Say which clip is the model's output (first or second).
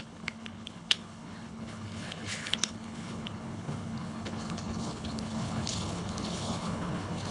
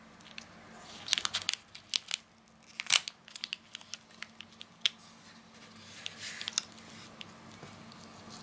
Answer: first